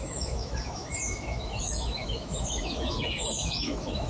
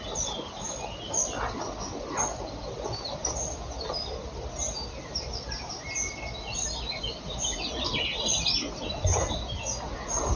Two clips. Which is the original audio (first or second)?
second